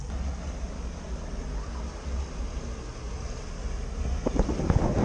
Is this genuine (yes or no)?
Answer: yes